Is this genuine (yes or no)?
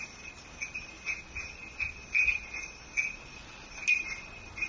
yes